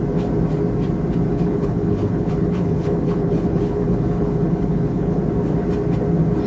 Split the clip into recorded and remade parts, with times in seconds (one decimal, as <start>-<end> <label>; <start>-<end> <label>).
0.0-1.3 recorded; 1.3-5.2 remade; 5.2-6.5 recorded